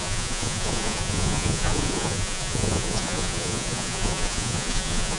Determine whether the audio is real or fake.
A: fake